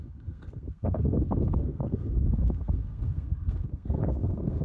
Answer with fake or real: fake